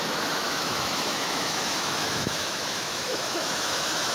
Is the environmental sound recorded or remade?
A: remade